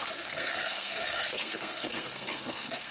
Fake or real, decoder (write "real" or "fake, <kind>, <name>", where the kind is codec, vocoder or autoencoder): fake, codec, SNAC